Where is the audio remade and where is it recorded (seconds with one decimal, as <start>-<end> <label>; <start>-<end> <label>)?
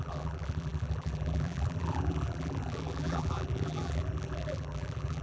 0.0-5.2 remade